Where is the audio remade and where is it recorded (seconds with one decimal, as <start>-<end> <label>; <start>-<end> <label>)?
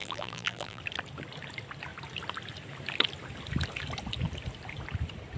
0.0-0.8 remade; 0.8-5.4 recorded